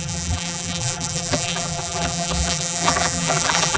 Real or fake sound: fake